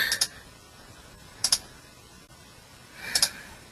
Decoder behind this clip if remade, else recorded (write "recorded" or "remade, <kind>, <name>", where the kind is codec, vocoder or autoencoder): recorded